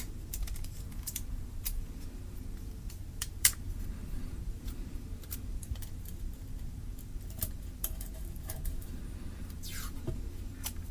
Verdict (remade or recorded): remade